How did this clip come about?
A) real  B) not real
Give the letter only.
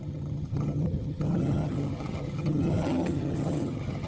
B